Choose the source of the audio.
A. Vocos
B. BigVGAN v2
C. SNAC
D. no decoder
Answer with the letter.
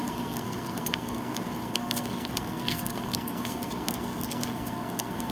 C